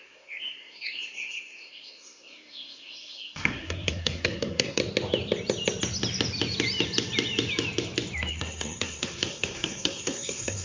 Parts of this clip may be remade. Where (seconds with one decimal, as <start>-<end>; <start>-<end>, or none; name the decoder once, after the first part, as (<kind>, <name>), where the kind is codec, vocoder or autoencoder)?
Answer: 0.0-4.8 (codec, SNAC); 8.3-10.6